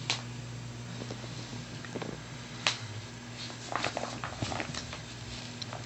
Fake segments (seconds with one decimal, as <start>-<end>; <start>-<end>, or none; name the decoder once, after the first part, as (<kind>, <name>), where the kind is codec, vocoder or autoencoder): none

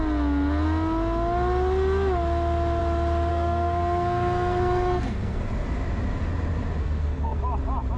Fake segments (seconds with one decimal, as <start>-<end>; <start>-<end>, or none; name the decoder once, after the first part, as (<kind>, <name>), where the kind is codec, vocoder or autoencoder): 3.3-5.4 (codec, SNAC); 6.8-7.4

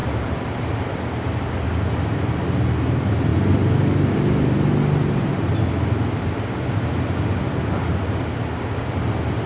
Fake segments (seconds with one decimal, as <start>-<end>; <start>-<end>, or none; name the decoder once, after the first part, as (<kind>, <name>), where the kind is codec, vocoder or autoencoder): 0.0-1.0 (vocoder, BigVGAN v2)